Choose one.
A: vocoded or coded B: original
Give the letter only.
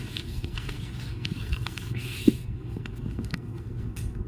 A